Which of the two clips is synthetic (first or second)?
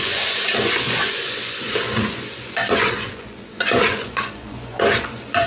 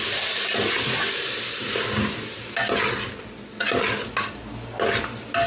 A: first